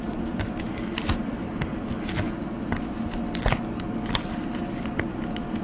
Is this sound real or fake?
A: real